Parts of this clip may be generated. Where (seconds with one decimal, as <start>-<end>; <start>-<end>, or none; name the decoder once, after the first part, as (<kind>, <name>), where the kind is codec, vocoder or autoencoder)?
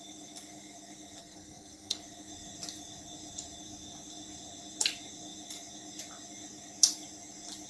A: 1.2-2.0 (codec, SNAC)